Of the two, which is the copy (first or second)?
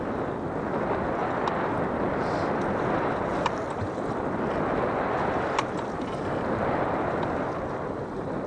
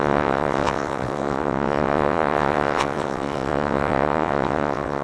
second